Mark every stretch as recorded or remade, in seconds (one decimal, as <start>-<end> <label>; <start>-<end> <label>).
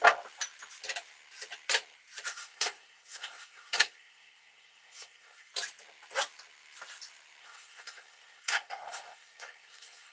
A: 0.0-2.3 recorded; 2.3-5.5 remade; 5.5-7.4 recorded; 7.4-10.1 remade